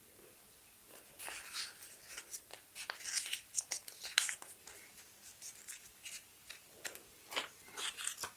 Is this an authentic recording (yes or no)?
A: yes